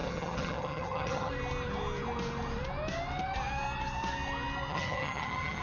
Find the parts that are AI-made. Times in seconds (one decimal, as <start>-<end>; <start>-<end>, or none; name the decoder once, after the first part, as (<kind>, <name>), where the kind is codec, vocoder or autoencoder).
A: 0.0-1.3 (vocoder, HiFi-GAN); 4.7-5.6